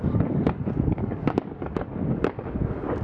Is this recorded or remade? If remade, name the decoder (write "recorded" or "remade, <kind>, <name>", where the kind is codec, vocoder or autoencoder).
remade, codec, DAC